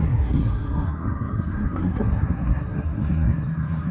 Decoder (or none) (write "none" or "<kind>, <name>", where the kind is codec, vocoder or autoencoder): codec, SNAC